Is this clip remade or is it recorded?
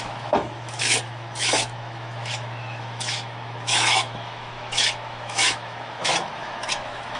remade